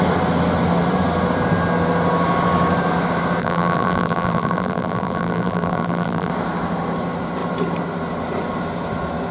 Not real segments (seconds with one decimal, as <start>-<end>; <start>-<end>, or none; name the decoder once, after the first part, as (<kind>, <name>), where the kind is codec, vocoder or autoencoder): 3.4-6.3 (vocoder, BigVGAN v2)